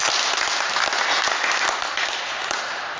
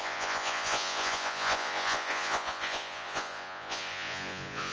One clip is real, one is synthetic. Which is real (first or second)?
first